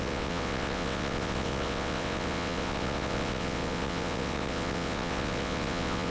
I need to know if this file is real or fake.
fake